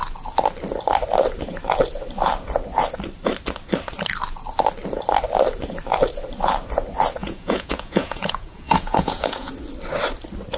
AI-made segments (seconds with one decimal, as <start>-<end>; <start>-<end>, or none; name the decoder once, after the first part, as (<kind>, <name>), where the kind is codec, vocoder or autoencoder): 7.2-9.5 (vocoder, Vocos)